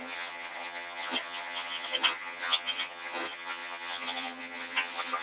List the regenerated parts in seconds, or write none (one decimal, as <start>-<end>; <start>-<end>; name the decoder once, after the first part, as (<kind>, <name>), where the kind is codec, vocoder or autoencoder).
0.0-5.2 (vocoder, HiFi-GAN)